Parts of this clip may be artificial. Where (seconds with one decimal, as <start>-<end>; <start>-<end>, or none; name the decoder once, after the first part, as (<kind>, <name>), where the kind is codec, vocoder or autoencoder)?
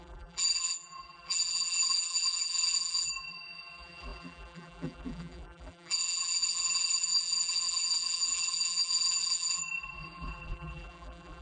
0.0-11.4 (vocoder, BigVGAN v2)